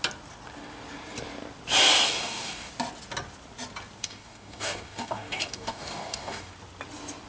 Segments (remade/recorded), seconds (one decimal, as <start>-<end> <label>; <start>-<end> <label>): 0.0-2.1 recorded; 2.1-2.7 remade; 2.7-4.0 recorded; 4.0-6.5 remade; 6.5-7.3 recorded